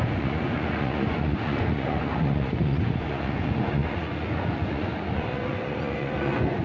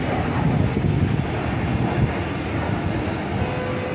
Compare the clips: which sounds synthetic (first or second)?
first